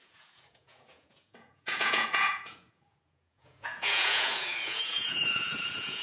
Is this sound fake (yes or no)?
yes